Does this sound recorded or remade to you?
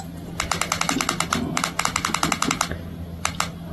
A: recorded